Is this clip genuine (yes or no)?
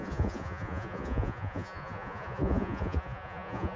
no